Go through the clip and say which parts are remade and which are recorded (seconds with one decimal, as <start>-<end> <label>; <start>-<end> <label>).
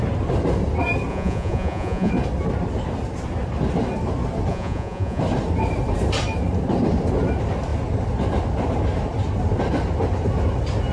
0.0-1.1 recorded; 1.1-2.1 remade; 2.1-4.5 recorded; 4.5-5.2 remade; 5.2-10.9 recorded